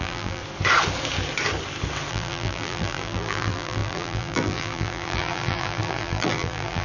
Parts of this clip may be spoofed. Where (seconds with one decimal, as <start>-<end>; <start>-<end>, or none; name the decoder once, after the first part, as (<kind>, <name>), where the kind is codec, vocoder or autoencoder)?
0.0-0.4 (vocoder, BigVGAN v2); 2.1-6.8

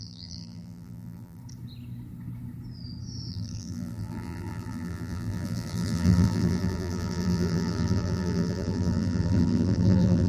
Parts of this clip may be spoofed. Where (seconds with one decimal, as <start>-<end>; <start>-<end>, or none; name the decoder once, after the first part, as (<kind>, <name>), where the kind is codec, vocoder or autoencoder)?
0.0-1.4 (vocoder, BigVGAN v2); 3.3-10.3

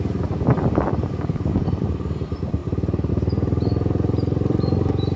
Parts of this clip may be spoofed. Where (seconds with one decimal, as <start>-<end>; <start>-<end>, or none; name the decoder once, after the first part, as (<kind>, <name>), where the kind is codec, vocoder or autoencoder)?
none

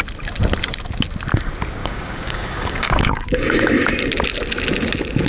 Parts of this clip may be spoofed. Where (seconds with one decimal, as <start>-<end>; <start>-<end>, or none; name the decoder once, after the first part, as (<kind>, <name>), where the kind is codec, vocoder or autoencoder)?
1.8-3.9 (codec, DAC)

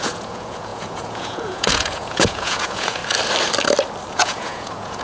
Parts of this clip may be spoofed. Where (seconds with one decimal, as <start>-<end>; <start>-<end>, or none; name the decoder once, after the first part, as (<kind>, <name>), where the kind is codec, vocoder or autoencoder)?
0.0-3.0 (vocoder, Vocos); 4.1-5.0

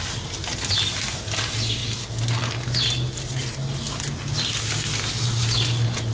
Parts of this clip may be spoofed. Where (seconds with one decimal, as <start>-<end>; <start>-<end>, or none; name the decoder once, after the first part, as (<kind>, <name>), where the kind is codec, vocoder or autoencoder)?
none

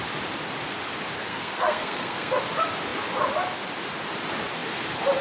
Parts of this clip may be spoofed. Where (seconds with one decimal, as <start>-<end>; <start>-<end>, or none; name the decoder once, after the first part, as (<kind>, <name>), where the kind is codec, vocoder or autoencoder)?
1.3-2.4 (codec, SNAC)